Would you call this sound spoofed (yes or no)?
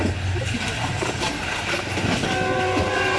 no